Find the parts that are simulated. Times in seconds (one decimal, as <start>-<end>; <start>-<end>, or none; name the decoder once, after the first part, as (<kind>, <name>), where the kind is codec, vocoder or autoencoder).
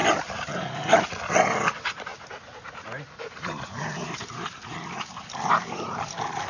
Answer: 0.0-1.0 (vocoder, BigVGAN v2); 2.1-6.0